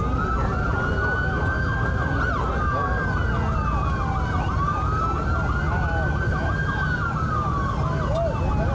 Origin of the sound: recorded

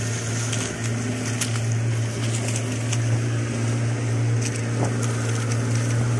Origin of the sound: recorded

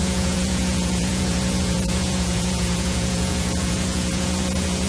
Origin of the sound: remade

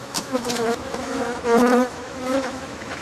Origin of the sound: remade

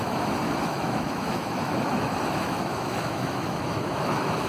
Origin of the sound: remade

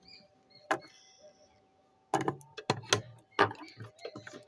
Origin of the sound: recorded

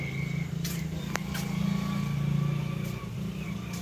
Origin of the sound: recorded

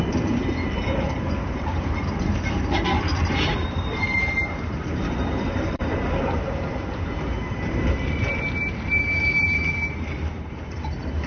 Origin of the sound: remade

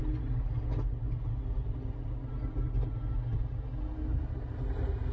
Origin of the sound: recorded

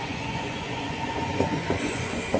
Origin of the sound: remade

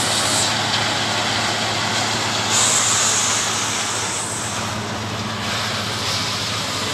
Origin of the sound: recorded